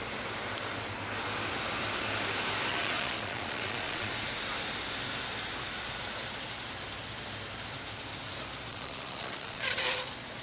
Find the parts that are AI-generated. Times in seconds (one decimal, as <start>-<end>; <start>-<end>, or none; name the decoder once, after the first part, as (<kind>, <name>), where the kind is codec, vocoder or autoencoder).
2.7-4.1 (vocoder, Vocos); 8.7-9.8